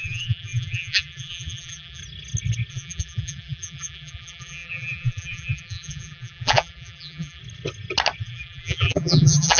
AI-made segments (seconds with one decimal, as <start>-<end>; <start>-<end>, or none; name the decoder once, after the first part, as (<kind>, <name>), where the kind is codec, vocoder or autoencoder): 0.0-2.0 (vocoder, BigVGAN v2); 2.7-7.4; 8.2-9.6

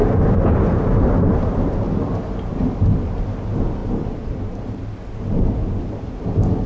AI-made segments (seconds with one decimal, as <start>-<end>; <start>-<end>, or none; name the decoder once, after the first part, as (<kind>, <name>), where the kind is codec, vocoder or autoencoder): 0.0-1.8 (vocoder, BigVGAN v2); 3.8-5.0

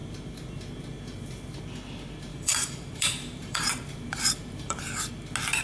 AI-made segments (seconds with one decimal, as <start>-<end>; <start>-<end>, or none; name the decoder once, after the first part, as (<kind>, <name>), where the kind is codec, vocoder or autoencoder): 2.3-5.1 (vocoder, BigVGAN v2)

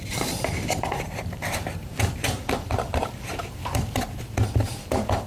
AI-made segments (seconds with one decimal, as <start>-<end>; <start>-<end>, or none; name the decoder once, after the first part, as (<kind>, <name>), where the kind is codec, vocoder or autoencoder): 0.0-5.3 (vocoder, BigVGAN v2)

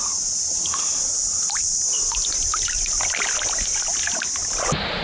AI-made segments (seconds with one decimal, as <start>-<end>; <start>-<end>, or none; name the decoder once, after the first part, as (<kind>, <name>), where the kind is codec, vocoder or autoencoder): 4.4-5.0 (vocoder, BigVGAN v2)

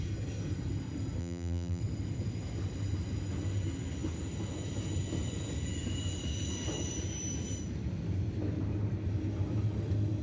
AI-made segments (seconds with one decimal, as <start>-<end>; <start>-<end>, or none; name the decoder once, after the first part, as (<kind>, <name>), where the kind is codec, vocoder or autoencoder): 1.2-1.8 (vocoder, BigVGAN v2)

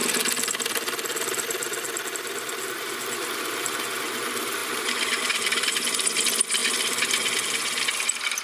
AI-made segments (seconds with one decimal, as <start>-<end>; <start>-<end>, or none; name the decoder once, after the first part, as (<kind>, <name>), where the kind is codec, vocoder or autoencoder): 4.6-5.7 (vocoder, BigVGAN v2); 6.6-8.4

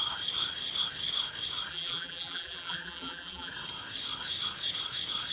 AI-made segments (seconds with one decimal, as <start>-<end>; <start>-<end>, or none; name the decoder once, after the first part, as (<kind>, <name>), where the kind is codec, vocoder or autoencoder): 1.7-3.5 (vocoder, BigVGAN v2)